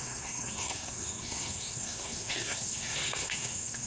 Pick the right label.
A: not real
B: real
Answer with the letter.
A